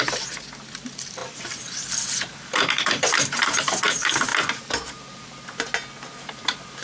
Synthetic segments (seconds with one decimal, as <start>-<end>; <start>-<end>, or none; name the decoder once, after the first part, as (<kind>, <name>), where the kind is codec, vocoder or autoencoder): 0.0-4.3 (vocoder, BigVGAN v2); 6.2-6.8